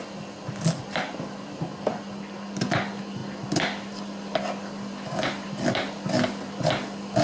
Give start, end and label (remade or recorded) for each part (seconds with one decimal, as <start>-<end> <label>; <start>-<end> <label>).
0.0-7.2 recorded